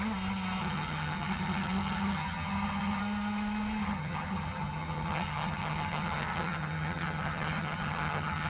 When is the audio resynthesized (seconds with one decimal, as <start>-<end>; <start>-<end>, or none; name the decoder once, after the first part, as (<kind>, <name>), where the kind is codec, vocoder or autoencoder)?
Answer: 0.6-3.0 (vocoder, HiFi-GAN); 3.8-8.5